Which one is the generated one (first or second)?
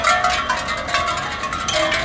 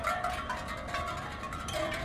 second